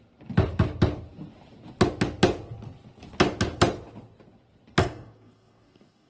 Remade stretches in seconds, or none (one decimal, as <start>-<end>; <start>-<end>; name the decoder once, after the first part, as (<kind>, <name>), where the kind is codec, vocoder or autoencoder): 4.8-6.1 (codec, DAC)